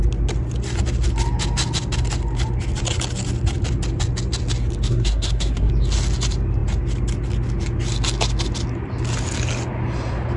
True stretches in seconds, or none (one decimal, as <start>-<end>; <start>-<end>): 0.0-4.9; 5.7-10.4